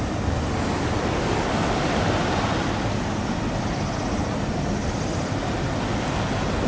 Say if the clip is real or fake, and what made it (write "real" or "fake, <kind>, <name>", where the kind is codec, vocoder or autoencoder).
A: real